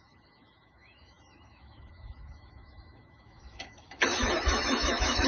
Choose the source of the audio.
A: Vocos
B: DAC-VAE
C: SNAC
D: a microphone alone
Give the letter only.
B